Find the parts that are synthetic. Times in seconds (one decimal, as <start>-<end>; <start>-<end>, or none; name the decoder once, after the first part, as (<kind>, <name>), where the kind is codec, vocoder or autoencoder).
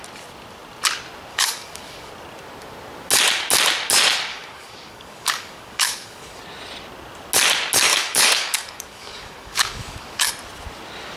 1.3-2.1 (codec, DAC); 4.3-6.4; 7.9-10.3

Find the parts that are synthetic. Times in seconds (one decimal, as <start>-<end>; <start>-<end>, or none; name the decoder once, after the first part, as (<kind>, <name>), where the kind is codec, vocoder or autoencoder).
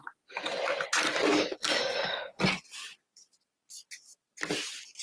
1.3-2.4 (codec, DAC)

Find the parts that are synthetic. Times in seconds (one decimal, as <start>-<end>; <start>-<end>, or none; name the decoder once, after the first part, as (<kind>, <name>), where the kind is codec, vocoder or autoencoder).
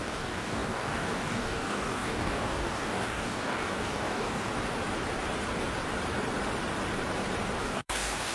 0.0-4.5 (codec, DAC); 7.6-8.3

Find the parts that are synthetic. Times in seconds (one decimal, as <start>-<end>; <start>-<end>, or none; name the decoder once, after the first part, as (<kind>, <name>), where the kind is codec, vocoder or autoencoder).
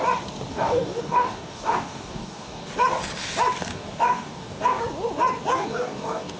0.5-2.7 (codec, DAC); 3.7-4.8; 5.5-6.4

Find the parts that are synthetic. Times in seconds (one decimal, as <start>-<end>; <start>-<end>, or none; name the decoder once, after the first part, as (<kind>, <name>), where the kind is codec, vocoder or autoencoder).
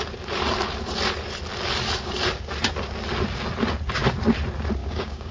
4.8-5.3 (codec, DAC)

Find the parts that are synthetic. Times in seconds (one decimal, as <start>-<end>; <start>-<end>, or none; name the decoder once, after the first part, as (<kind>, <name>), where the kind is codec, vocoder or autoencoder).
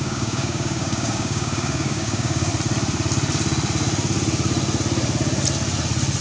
0.0-2.5 (codec, DAC)